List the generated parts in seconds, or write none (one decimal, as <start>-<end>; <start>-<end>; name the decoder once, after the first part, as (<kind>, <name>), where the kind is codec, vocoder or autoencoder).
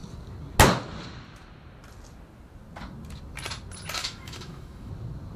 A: 4.0-4.9 (autoencoder, DAC-VAE)